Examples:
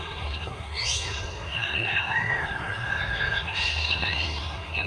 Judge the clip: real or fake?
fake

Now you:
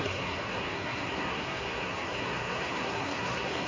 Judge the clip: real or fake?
fake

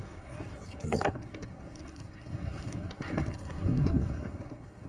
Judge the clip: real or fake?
fake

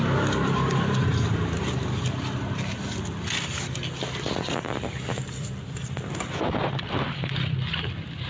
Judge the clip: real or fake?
real